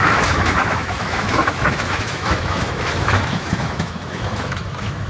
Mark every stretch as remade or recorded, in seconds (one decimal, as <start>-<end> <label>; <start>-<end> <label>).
0.0-5.1 remade